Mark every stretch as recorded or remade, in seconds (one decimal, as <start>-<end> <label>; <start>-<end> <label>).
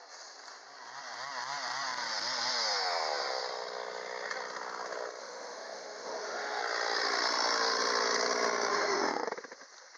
0.0-5.2 recorded; 5.2-6.6 remade; 6.6-8.7 recorded; 8.7-9.3 remade; 9.3-10.0 recorded